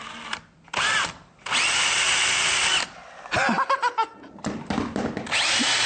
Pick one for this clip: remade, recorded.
recorded